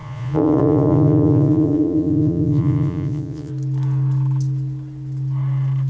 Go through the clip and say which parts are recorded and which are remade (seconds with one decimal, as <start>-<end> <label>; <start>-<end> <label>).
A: 0.0-3.5 remade; 3.5-5.9 recorded